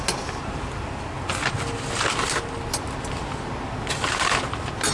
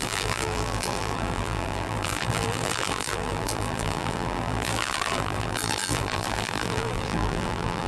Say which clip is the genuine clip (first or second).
first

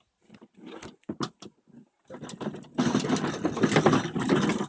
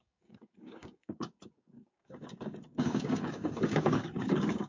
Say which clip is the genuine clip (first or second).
first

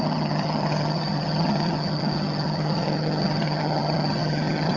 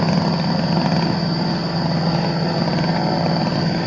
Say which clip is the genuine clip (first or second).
second